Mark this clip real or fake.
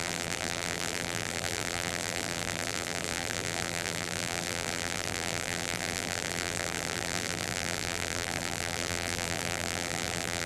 fake